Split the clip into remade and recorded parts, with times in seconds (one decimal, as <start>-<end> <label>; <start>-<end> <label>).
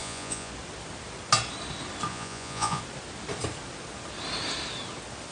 0.0-0.5 remade; 0.5-2.1 recorded; 2.1-2.8 remade; 2.8-5.3 recorded